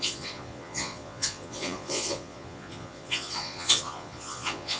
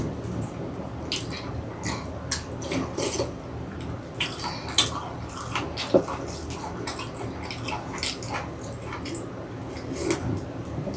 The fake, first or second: first